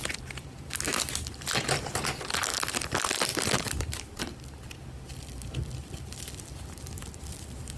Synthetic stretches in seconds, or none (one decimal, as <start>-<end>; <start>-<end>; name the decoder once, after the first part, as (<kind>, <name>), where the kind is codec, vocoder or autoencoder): 0.0-1.1 (vocoder, BigVGAN v2); 3.3-5.9